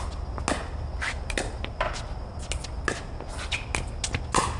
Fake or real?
real